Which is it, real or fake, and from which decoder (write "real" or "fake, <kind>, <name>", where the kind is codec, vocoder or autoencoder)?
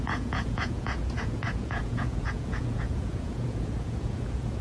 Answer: fake, vocoder, Vocos